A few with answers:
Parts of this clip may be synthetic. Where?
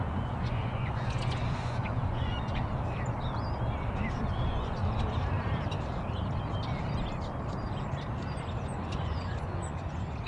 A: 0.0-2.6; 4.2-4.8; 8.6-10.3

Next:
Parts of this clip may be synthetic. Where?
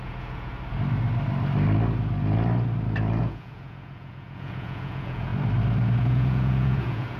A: 0.0-0.5; 3.2-5.3; 6.0-7.2